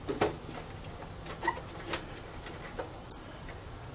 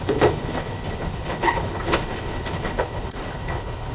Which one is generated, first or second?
second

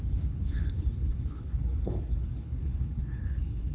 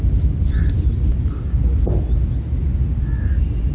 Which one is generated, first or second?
first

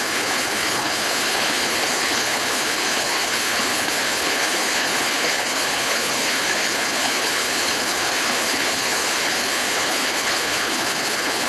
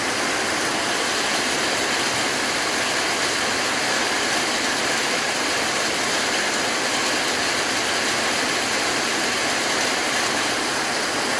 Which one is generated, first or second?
first